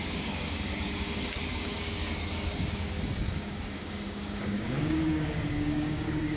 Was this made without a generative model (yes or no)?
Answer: no